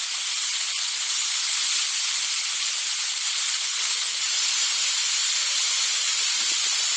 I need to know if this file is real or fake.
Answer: real